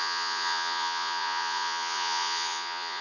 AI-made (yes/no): yes